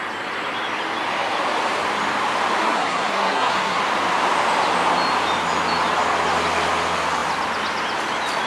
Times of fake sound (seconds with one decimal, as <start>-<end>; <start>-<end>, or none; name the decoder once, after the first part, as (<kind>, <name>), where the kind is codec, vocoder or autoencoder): 2.6-3.8 (codec, SNAC)